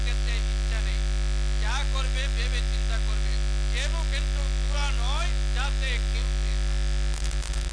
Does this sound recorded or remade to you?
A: recorded